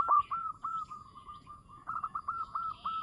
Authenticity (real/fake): fake